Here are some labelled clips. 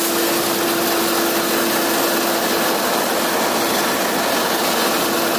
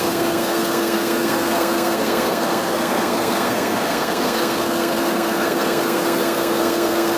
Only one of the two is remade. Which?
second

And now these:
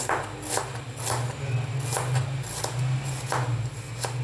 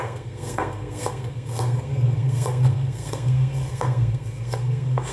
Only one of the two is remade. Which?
second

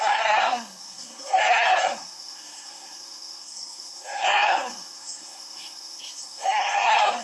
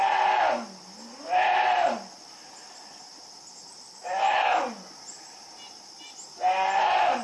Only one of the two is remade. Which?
first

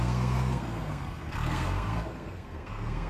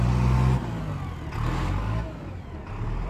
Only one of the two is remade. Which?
first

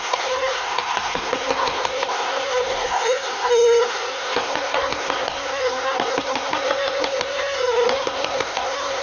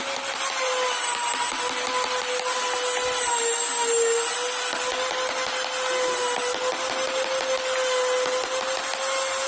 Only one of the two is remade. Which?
first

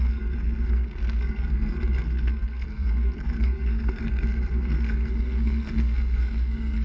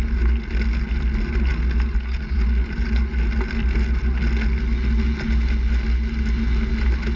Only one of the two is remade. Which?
first